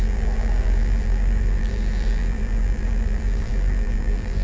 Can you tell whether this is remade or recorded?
remade